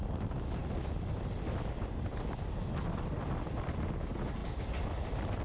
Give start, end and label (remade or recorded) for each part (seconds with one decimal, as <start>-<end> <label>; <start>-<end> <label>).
0.0-5.4 recorded